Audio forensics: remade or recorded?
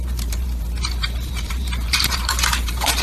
remade